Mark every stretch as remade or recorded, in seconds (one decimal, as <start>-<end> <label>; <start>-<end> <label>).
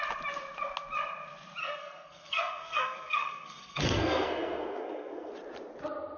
0.0-1.6 recorded; 1.6-5.3 remade; 5.3-6.2 recorded